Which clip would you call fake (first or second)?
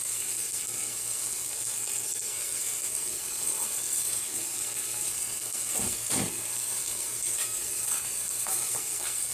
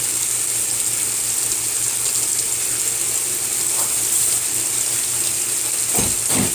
first